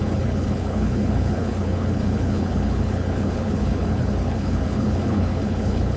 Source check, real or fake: fake